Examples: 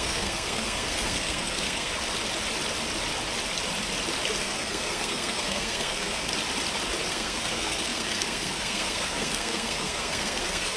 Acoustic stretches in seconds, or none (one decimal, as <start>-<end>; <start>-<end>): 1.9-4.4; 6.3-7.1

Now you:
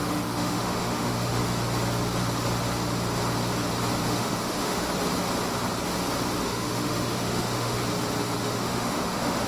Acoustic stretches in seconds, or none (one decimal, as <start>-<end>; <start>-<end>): 1.4-4.1; 4.9-6.4; 7.8-8.4

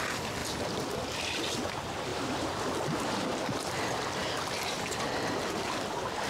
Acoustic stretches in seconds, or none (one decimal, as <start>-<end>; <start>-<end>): 0.0-6.3

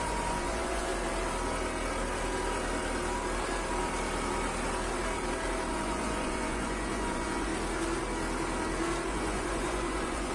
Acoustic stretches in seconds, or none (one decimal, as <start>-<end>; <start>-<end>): 0.9-5.7; 7.5-9.1

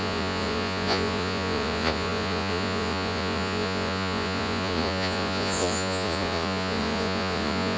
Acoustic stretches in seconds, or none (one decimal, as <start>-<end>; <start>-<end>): none

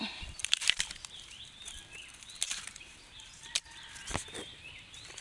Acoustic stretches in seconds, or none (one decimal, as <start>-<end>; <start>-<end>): 0.0-0.4; 3.5-5.2

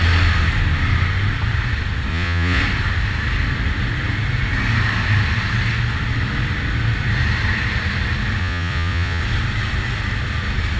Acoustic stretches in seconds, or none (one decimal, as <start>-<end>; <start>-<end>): 0.0-2.1; 2.6-8.4; 9.2-10.8

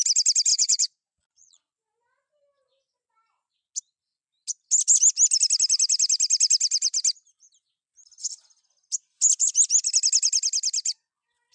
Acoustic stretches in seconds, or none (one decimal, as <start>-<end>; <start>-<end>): 0.0-0.5; 1.6-11.5